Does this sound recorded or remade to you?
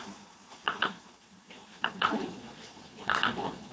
remade